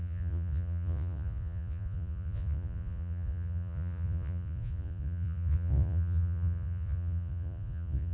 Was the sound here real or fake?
fake